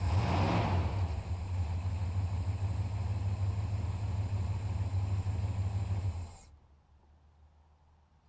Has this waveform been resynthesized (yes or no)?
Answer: no